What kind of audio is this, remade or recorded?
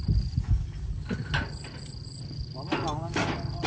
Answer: recorded